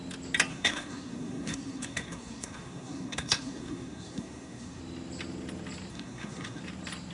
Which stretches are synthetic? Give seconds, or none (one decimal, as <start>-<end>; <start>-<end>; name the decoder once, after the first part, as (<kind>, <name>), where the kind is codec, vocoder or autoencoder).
0.5-4.8 (codec, SNAC); 5.9-6.6